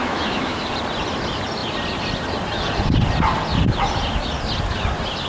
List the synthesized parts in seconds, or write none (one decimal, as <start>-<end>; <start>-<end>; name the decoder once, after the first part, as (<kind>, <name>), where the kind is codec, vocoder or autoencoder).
0.0-0.6 (autoencoder, DAC-VAE)